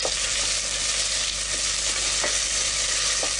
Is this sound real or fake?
real